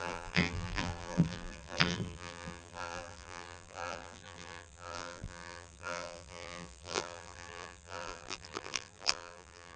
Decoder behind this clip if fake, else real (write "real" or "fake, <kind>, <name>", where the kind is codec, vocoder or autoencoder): fake, vocoder, BigVGAN v2